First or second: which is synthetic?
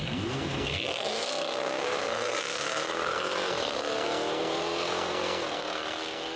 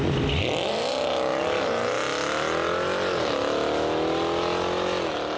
first